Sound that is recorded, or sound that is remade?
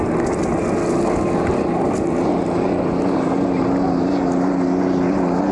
recorded